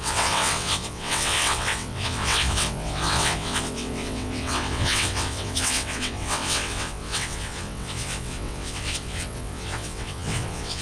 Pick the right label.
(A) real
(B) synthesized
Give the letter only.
B